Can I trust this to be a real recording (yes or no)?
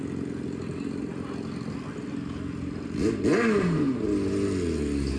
yes